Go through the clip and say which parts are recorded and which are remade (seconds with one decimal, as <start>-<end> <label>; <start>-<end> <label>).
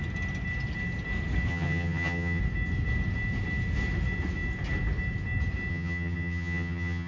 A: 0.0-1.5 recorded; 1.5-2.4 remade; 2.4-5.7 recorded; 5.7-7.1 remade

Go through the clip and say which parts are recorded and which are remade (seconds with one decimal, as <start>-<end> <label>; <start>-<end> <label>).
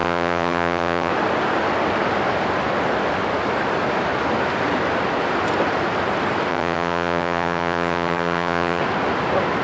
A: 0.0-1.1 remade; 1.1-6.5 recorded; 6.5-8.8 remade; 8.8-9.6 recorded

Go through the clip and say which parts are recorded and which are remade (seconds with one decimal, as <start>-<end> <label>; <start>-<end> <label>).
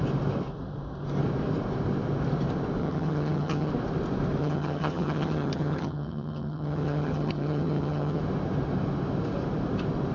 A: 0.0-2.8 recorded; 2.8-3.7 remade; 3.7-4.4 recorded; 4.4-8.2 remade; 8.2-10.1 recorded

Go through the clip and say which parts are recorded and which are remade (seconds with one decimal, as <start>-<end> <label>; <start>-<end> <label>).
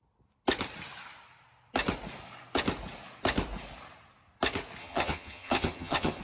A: 0.0-4.8 recorded; 4.8-6.2 remade